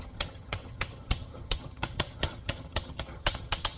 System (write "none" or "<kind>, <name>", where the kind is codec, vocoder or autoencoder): vocoder, HiFi-GAN